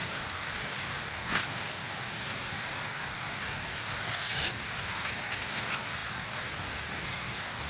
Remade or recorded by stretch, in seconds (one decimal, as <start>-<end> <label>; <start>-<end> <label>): 0.0-7.7 remade